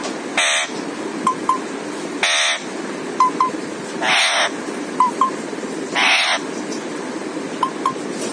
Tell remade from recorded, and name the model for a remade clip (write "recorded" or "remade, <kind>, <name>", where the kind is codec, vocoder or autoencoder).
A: recorded